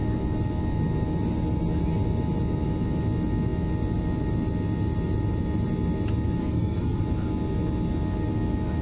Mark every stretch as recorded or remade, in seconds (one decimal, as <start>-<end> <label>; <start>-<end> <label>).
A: 0.0-6.4 recorded; 6.4-7.0 remade; 7.0-8.8 recorded